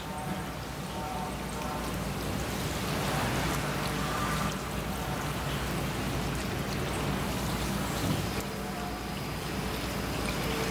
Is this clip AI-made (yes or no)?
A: no